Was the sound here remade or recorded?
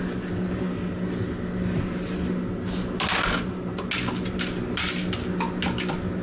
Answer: recorded